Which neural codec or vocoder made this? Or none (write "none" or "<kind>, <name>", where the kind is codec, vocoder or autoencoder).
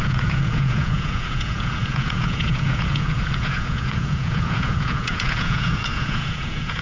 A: vocoder, Vocos